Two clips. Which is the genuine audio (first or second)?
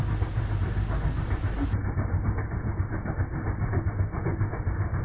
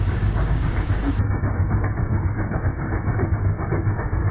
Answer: first